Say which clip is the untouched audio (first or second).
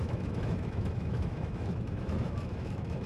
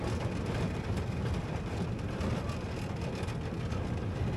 second